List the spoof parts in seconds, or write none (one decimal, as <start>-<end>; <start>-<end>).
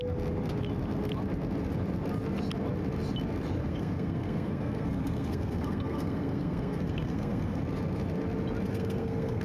3.6-7.6; 8.7-9.4